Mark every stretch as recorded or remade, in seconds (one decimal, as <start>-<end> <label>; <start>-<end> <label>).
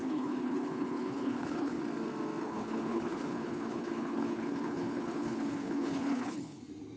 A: 0.0-1.8 remade; 1.8-2.4 recorded; 2.4-6.6 remade; 6.6-7.0 recorded